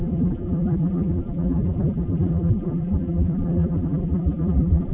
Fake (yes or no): yes